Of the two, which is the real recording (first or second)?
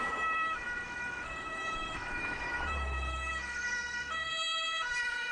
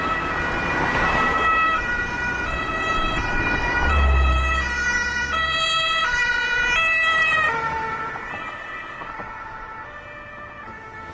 second